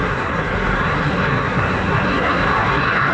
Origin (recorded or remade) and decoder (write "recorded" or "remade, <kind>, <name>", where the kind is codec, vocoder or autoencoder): remade, codec, SNAC